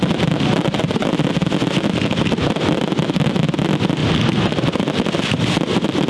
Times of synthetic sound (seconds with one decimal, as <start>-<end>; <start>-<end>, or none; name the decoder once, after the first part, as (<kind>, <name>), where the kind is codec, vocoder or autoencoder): none